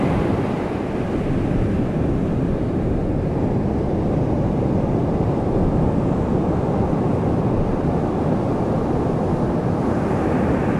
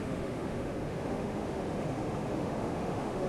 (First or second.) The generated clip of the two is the second